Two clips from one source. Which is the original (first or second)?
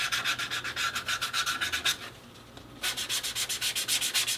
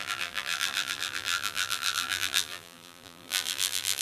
first